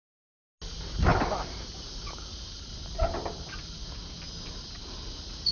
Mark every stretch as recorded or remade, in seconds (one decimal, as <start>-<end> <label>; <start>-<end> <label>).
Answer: 0.0-5.5 recorded